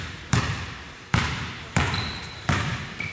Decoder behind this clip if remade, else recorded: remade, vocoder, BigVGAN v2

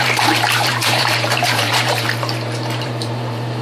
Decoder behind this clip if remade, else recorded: remade, vocoder, BigVGAN v2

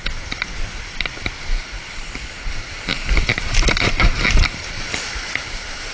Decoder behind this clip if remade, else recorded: remade, vocoder, BigVGAN v2